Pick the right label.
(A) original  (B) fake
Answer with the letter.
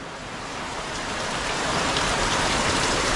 B